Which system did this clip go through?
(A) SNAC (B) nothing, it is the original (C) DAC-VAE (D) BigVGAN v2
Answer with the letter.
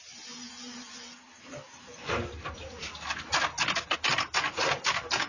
B